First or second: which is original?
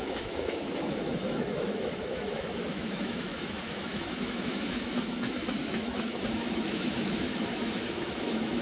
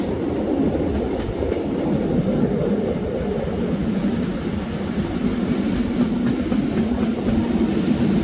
second